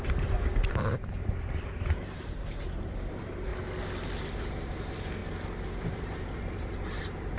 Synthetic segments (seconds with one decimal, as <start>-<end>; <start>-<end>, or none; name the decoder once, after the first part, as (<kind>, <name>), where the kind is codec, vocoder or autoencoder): 0.0-3.5 (vocoder, BigVGAN v2); 4.2-5.2; 5.8-7.4

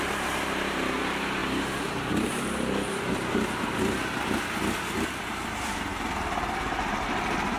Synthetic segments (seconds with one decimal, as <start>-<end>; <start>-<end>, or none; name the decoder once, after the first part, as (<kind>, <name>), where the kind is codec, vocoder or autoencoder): 0.0-7.6 (vocoder, BigVGAN v2)

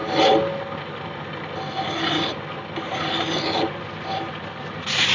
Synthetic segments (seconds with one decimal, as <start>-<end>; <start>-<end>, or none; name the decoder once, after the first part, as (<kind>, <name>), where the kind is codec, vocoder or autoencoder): none

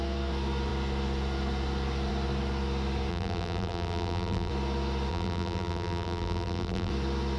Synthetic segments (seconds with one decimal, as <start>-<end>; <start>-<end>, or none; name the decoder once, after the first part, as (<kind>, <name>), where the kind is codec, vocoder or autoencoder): 3.1-4.5 (vocoder, BigVGAN v2); 5.1-6.9